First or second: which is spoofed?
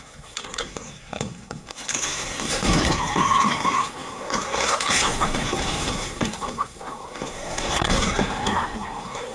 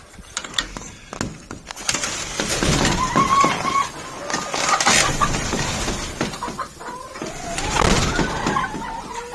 first